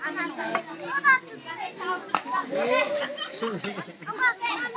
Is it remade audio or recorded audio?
recorded